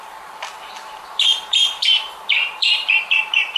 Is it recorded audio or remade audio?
remade